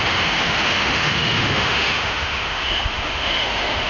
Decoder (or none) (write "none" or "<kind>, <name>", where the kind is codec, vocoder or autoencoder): autoencoder, DAC-VAE